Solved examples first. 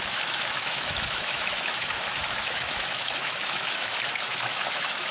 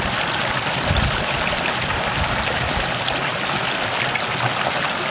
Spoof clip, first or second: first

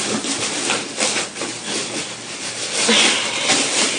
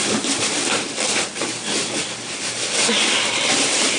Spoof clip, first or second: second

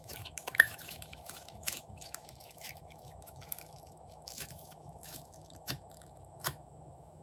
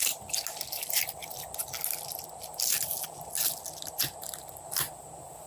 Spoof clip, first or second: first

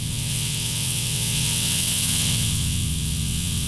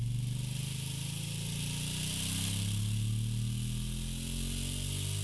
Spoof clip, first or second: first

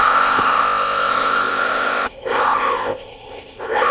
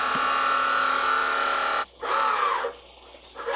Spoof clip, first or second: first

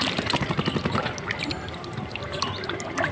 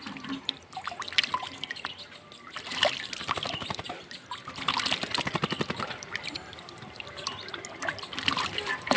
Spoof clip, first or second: second